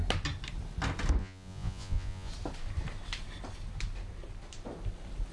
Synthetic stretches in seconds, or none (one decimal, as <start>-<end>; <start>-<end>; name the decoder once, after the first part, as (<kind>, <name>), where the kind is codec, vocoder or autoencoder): 1.2-2.3 (vocoder, Vocos)